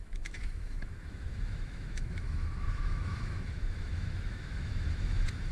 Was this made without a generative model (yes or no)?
no